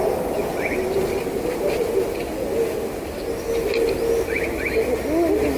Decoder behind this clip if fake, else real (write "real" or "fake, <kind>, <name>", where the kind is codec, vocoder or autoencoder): real